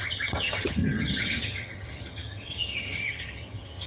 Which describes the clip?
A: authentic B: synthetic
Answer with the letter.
B